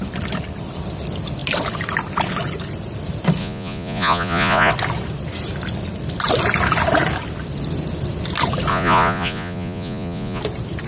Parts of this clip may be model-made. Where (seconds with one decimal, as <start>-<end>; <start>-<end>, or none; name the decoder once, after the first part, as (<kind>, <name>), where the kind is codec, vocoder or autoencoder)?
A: 3.4-4.7 (vocoder, Vocos); 8.7-10.4